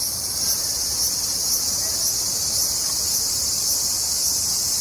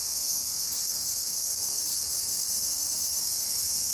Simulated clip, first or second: second